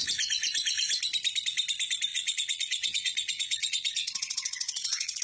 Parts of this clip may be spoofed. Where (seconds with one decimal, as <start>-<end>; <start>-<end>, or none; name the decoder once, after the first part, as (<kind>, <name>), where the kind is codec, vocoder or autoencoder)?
2.1-5.2 (vocoder, Vocos)